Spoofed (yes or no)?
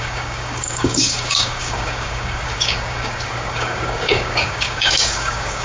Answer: yes